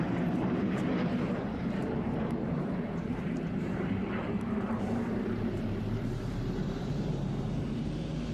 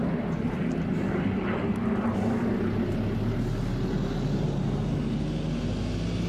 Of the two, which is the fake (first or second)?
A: first